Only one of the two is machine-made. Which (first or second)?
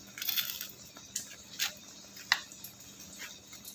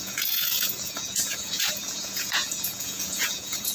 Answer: second